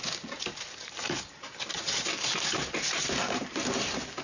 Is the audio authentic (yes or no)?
yes